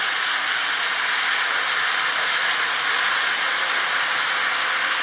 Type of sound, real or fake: real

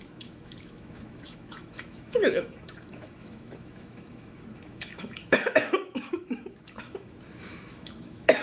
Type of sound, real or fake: fake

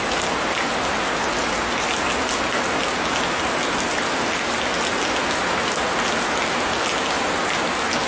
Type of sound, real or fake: real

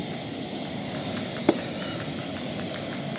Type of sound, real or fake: real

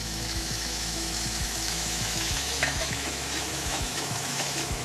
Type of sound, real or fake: fake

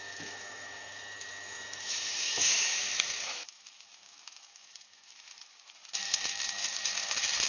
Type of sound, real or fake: fake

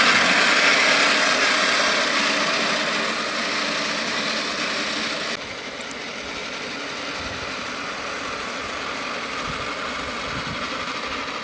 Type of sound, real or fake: real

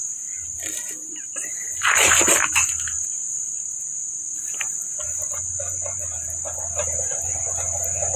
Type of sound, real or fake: real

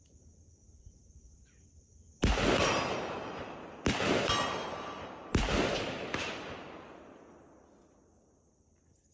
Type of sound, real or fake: real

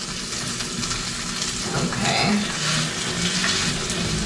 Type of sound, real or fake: real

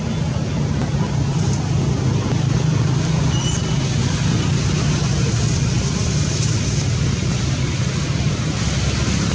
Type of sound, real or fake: real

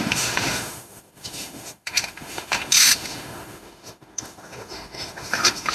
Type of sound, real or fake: fake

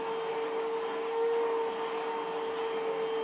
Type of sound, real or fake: real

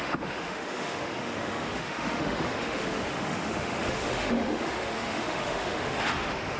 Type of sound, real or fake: fake